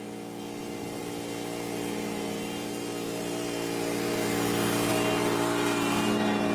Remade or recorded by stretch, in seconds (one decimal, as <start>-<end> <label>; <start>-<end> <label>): 0.0-6.5 recorded